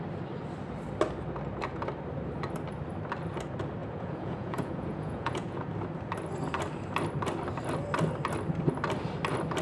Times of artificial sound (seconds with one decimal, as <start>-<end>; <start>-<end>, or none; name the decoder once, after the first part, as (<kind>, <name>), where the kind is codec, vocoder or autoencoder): 3.8-5.7 (vocoder, Vocos)